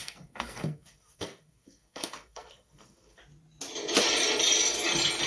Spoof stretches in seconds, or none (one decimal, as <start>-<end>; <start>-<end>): 0.0-3.2